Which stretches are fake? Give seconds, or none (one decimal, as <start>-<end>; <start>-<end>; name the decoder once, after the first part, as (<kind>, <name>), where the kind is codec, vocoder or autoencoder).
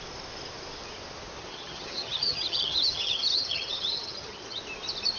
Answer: 1.5-4.6 (vocoder, HiFi-GAN)